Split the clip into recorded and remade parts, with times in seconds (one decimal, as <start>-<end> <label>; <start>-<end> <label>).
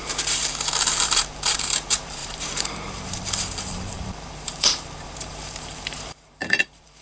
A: 0.0-7.0 remade